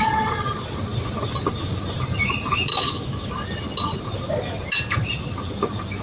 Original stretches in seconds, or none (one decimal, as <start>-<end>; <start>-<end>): 0.0-2.7; 3.3-6.0